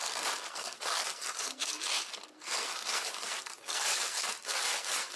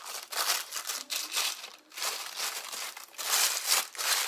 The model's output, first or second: first